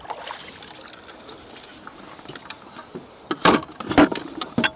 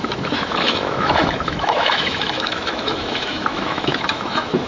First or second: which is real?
first